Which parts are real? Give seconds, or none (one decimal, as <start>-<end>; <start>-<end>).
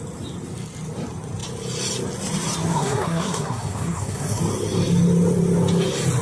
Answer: 0.0-2.7; 4.4-6.2